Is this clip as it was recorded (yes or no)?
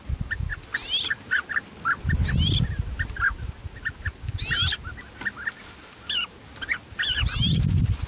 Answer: yes